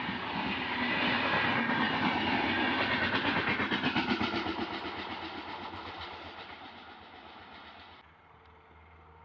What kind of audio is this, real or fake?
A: real